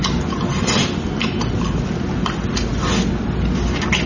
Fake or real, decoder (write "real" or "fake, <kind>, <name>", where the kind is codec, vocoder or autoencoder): real